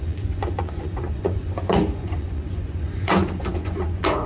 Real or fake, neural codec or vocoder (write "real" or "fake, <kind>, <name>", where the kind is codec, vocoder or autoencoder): fake, vocoder, Vocos